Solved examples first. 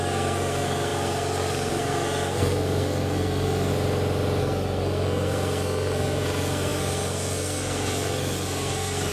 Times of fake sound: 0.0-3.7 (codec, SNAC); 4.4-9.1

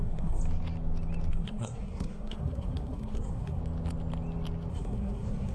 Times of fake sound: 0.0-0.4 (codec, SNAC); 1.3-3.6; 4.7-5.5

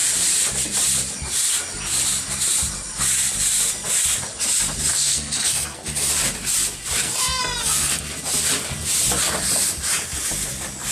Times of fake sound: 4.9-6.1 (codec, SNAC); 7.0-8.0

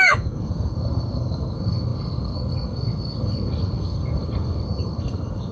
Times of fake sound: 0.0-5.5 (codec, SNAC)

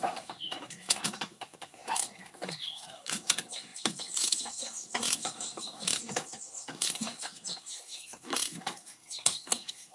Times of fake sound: 0.0-9.9 (codec, SNAC)